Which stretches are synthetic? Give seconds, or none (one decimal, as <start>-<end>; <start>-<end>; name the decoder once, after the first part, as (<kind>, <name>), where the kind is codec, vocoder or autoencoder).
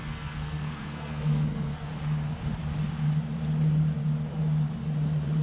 0.0-1.9 (codec, SNAC)